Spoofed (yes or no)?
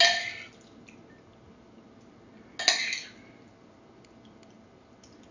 no